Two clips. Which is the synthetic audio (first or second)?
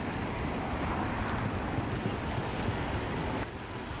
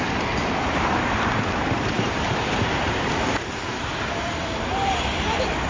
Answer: second